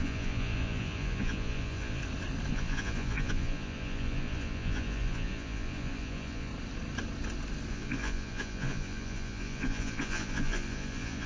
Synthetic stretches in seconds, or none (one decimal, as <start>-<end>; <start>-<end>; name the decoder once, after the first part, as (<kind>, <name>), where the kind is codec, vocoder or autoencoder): 0.0-2.0 (vocoder, Vocos); 2.5-6.5; 7.7-11.3